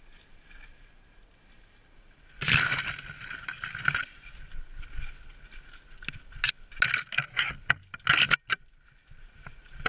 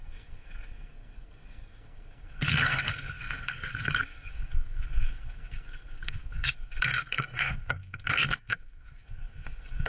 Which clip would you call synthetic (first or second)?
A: second